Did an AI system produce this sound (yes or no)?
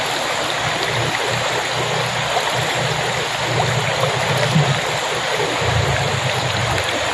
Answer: no